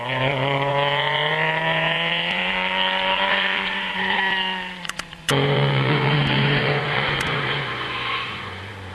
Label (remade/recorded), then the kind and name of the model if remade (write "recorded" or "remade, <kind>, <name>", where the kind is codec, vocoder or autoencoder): remade, vocoder, Vocos